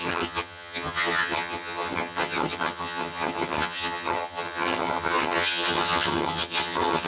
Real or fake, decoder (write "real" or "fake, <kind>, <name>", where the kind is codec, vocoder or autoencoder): fake, vocoder, HiFi-GAN